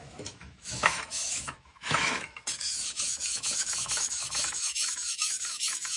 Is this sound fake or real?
fake